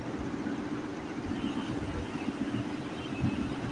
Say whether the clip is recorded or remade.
remade